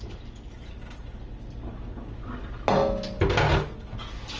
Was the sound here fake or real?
real